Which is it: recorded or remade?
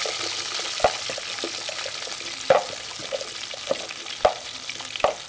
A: recorded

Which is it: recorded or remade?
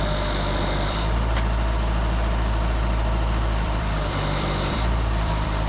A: remade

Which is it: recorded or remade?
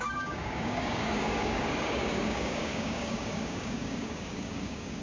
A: remade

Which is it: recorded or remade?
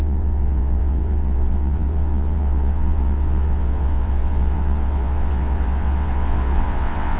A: remade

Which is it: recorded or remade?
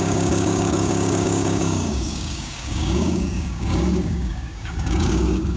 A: remade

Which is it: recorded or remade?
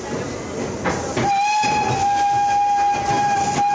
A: recorded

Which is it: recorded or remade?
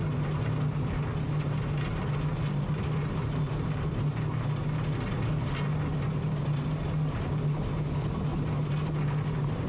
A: recorded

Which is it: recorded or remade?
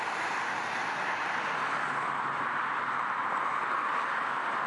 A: recorded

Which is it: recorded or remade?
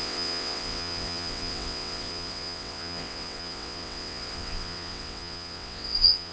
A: remade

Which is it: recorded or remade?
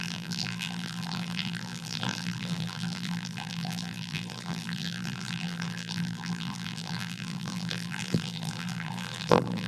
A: remade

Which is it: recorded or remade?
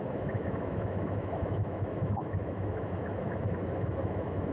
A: remade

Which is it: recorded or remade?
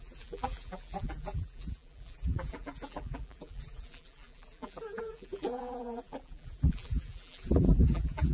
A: remade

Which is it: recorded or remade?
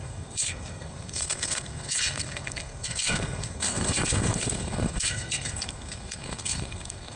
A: remade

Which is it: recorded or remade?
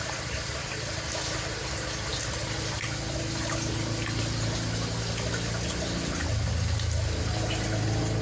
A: recorded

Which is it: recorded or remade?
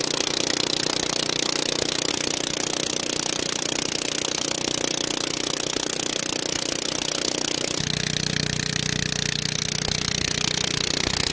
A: recorded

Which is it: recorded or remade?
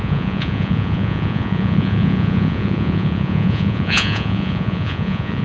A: remade